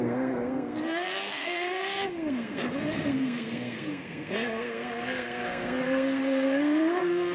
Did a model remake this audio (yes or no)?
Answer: yes